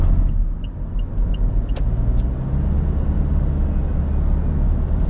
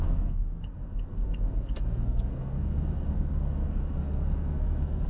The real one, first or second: first